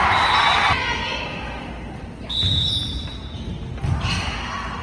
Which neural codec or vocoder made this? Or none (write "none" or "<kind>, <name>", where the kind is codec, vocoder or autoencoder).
none